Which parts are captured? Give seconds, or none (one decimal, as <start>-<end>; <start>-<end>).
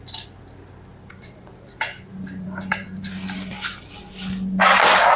0.0-0.9; 4.0-5.2